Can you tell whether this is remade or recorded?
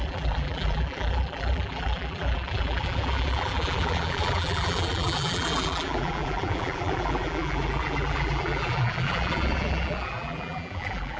remade